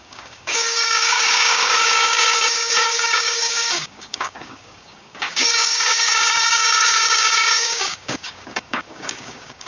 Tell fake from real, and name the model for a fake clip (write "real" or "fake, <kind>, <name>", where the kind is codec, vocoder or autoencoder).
fake, codec, DAC